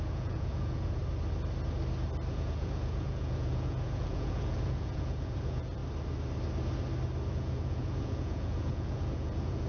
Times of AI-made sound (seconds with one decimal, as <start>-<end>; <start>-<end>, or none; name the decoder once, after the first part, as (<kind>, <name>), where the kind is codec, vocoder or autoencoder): 0.0-1.0 (vocoder, Vocos); 2.3-5.8; 7.3-9.7